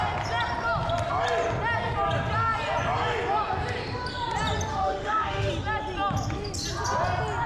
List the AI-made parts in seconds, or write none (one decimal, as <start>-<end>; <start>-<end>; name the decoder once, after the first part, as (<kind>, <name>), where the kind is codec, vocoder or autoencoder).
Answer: 4.7-5.5 (autoencoder, DAC-VAE)